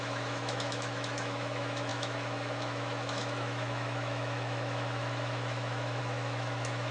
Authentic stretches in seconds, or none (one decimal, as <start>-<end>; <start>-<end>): none